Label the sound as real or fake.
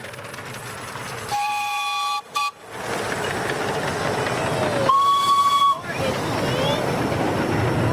real